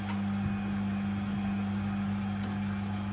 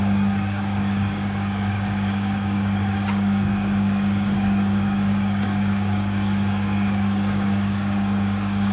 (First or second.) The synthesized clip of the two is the second